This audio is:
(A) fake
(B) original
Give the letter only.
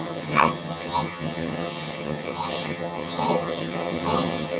A